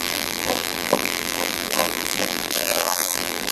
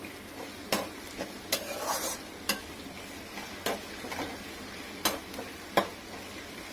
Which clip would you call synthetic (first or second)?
first